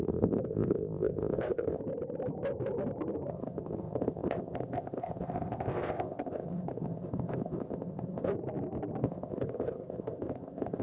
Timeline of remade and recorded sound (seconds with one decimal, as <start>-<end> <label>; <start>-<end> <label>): 0.0-1.8 remade; 1.8-3.3 recorded; 3.3-8.3 remade; 8.3-9.0 recorded; 9.0-10.8 remade